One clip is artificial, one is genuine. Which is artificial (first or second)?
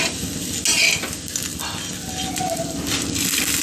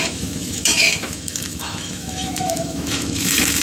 second